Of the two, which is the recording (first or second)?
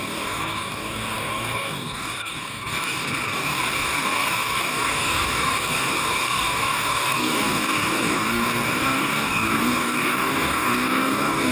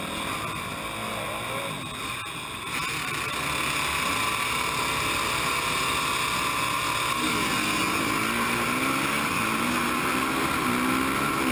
second